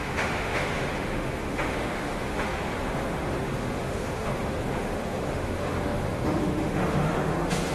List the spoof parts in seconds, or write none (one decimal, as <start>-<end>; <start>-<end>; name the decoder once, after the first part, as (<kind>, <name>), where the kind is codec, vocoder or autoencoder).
0.0-7.7 (autoencoder, DAC-VAE)